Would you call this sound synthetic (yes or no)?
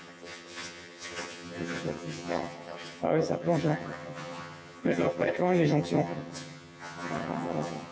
yes